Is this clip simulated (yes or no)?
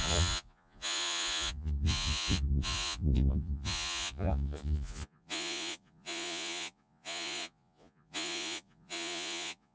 yes